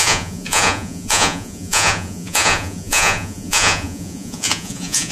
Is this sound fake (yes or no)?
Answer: yes